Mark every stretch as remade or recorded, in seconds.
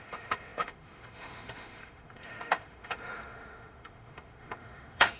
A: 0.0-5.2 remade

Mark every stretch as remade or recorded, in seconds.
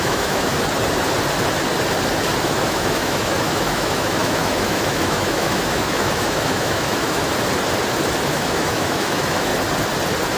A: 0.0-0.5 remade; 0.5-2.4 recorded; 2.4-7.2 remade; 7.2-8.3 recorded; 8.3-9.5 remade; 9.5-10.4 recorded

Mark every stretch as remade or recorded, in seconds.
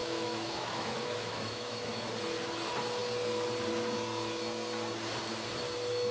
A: 0.0-2.0 remade; 2.0-6.1 recorded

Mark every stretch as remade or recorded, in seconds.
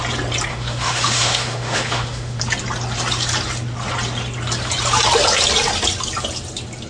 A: 0.0-0.5 recorded; 0.5-2.4 remade; 2.4-6.9 recorded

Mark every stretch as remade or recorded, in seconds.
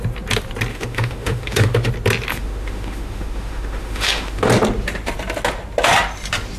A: 0.0-0.7 recorded; 0.7-1.9 remade; 1.9-2.3 recorded; 2.3-4.5 remade; 4.5-6.6 recorded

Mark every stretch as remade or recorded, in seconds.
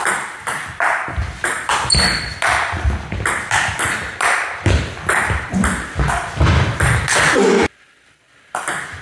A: 0.0-9.0 recorded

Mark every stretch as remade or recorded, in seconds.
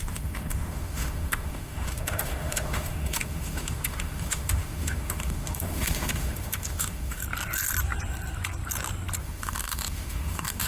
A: 0.0-7.2 remade; 7.2-9.2 recorded; 9.2-10.7 remade